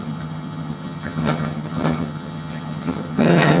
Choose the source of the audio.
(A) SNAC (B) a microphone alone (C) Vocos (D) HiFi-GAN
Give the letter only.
D